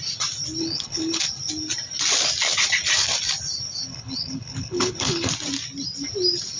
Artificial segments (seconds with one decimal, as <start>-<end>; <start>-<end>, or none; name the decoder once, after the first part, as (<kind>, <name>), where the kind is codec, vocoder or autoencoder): 0.6-1.2 (codec, HILCodec); 3.9-5.3